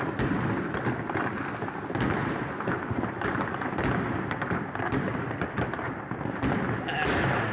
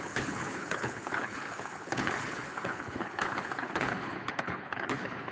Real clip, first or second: first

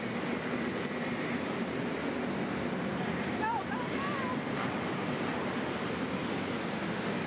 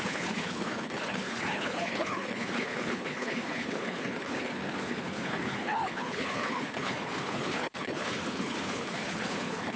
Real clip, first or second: first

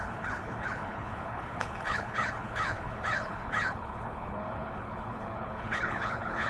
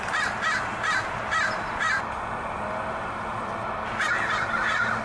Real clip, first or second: second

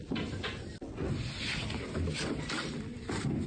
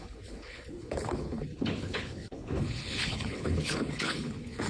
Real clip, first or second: first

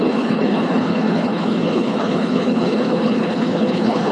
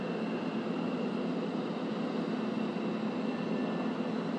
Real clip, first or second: second